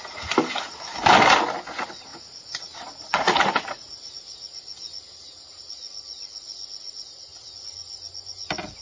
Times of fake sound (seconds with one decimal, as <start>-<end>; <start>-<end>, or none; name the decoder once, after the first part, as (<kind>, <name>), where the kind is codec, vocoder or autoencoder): 2.1-4.1 (vocoder, Vocos)

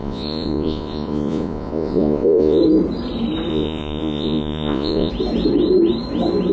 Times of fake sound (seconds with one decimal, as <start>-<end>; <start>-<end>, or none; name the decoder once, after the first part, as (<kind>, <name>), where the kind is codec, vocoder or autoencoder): 0.0-2.6 (vocoder, Vocos); 3.5-5.1